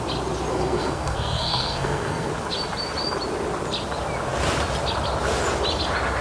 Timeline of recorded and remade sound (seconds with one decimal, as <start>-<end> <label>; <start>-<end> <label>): 0.0-0.5 recorded; 0.5-2.3 remade; 2.3-6.2 recorded